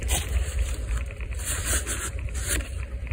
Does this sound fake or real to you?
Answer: fake